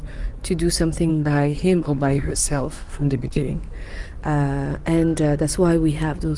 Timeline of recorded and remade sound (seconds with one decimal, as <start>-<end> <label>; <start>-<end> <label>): 0.0-1.1 recorded; 1.1-3.5 remade; 3.5-6.4 recorded